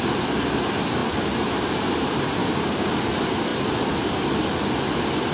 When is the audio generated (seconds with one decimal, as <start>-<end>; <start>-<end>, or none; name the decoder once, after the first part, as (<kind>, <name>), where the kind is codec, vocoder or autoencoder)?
2.4-2.9 (codec, DAC)